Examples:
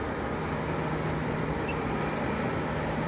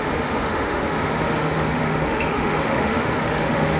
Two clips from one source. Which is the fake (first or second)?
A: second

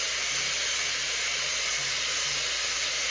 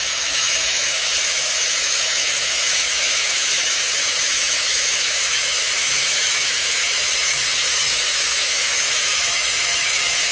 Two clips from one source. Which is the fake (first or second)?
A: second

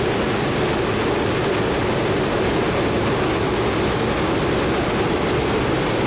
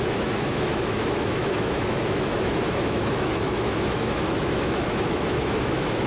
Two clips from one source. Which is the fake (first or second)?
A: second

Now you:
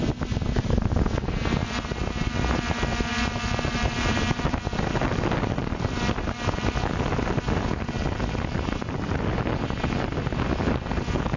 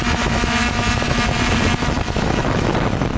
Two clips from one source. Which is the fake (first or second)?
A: second